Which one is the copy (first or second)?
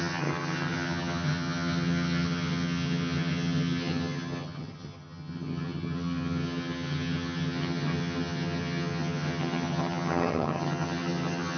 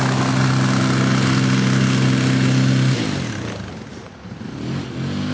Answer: first